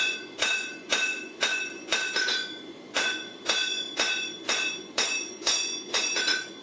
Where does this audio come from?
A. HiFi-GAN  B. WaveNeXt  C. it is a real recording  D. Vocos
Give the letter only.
D